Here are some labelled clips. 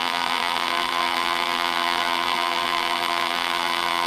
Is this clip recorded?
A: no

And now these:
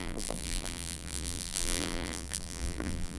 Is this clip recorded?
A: no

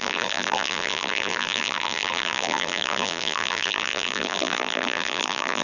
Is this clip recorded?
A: no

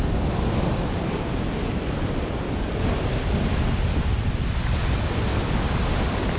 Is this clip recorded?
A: yes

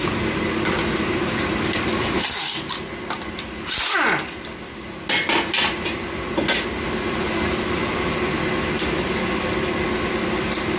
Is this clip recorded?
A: yes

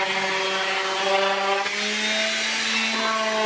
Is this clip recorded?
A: yes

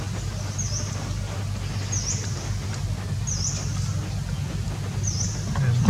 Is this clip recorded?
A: yes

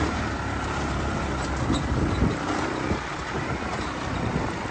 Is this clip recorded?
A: yes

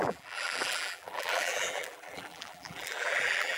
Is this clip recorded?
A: no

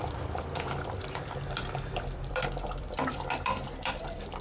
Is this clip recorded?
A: no